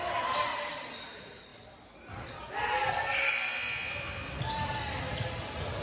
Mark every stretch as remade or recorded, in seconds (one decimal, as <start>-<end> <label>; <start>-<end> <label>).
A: 0.0-0.5 recorded; 0.5-1.0 remade; 1.0-5.8 recorded